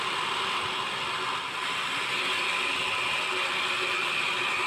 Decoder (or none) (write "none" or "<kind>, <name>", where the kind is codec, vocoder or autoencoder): none